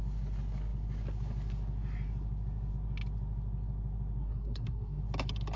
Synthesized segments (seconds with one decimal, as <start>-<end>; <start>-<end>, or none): 4.2-5.0